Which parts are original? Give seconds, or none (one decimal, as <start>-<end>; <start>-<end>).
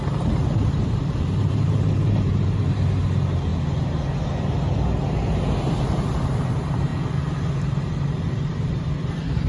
3.5-5.6; 6.9-7.8